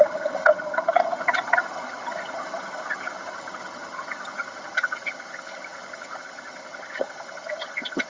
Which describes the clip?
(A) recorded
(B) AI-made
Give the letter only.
B